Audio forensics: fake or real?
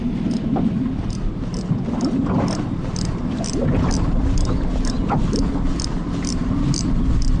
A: real